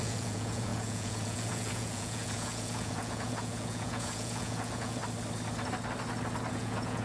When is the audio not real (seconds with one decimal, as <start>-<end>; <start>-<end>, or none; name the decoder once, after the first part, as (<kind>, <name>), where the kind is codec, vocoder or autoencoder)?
0.0-5.0 (vocoder, Vocos); 6.5-7.0